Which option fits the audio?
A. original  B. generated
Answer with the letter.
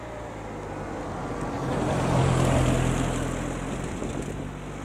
A